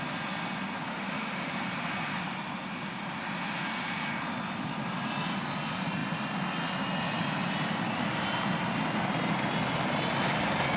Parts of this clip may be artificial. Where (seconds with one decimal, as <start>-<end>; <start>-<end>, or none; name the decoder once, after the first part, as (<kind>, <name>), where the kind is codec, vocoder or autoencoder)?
0.9-1.5 (autoencoder, DAC-VAE)